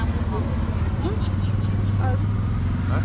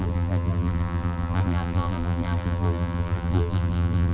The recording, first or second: first